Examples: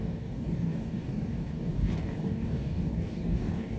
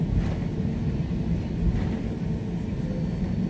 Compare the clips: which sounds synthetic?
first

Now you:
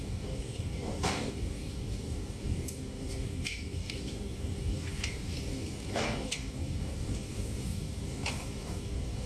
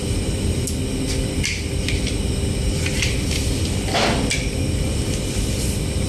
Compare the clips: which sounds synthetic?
first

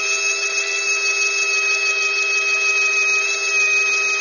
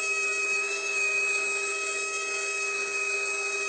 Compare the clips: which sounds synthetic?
second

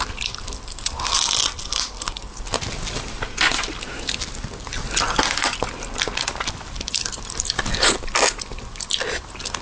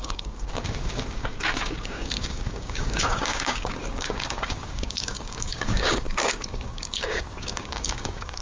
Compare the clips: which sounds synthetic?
second